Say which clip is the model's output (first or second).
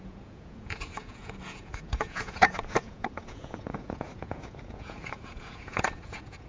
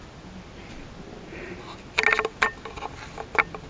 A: first